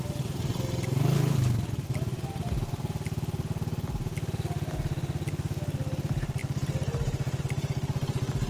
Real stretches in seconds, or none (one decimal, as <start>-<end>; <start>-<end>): 0.5-5.6; 6.4-7.4